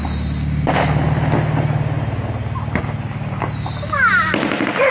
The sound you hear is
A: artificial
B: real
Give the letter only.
B